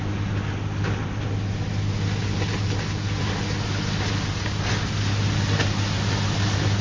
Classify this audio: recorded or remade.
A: recorded